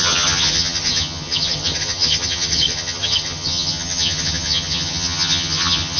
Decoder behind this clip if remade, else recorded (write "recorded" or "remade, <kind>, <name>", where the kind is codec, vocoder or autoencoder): remade, vocoder, HiFi-GAN